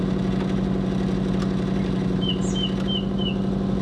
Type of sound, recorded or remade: recorded